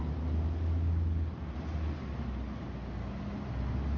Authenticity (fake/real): real